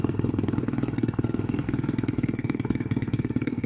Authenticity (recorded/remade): remade